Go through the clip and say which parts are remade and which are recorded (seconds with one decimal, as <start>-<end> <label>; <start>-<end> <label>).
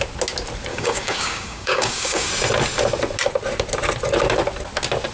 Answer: 0.0-0.7 recorded; 0.7-2.3 remade; 2.3-5.1 recorded